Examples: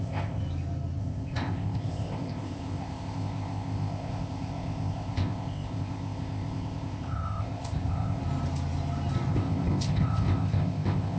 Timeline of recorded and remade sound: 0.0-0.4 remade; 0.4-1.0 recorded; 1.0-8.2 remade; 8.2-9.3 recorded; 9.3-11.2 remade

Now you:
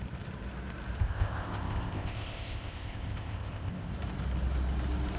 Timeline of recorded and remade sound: 0.0-1.0 recorded; 1.0-3.9 remade; 3.9-5.2 recorded

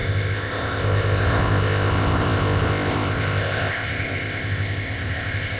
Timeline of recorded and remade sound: 0.0-5.6 remade

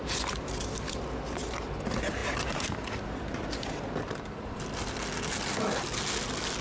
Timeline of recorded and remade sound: 0.0-6.6 recorded

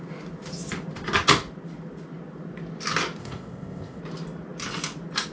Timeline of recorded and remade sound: 0.0-3.2 recorded; 3.2-4.0 remade; 4.0-5.3 recorded

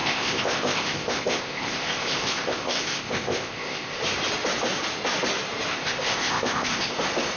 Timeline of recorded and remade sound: 0.0-4.0 remade; 4.0-5.7 recorded; 5.7-6.9 remade; 6.9-7.4 recorded

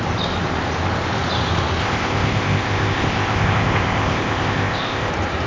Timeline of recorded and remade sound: 0.0-1.8 recorded; 1.8-5.1 remade; 5.1-5.5 recorded

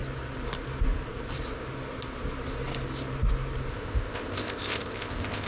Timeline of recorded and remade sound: 0.0-3.7 recorded; 3.7-5.5 remade